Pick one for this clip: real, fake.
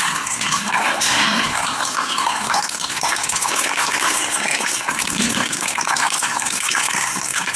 fake